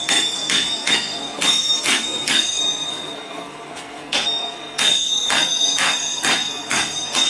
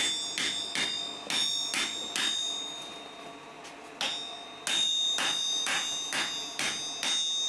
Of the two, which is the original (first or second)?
second